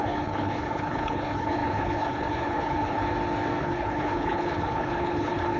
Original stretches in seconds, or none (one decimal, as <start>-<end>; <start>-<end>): 3.0-3.6